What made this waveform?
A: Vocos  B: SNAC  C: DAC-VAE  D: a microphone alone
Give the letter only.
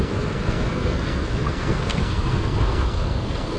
B